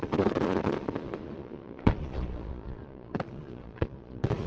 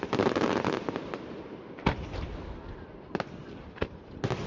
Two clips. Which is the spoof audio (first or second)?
first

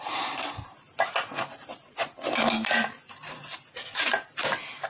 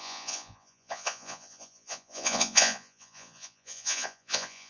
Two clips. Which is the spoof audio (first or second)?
second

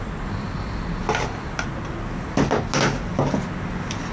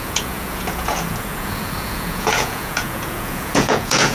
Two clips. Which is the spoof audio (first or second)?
second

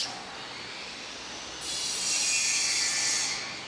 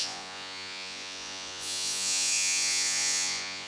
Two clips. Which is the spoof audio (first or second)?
second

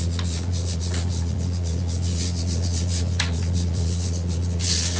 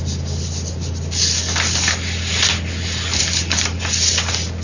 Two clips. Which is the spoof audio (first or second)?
first